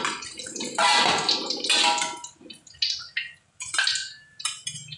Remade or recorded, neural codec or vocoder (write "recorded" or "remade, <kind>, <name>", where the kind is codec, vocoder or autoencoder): recorded